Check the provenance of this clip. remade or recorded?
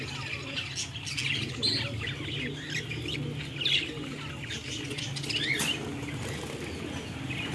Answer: recorded